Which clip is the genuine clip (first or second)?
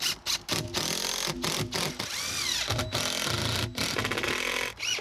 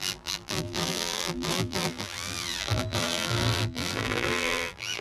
first